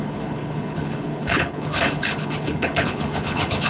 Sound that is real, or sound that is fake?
fake